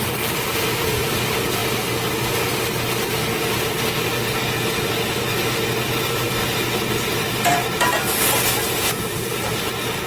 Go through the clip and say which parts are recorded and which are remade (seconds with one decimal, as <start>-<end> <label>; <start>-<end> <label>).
0.0-10.1 recorded